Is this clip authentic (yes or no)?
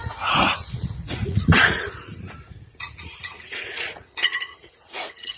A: no